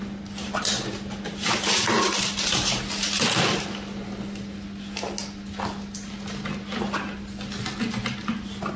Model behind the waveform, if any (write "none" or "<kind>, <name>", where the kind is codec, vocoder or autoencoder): none